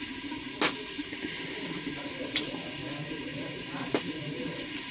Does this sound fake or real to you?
real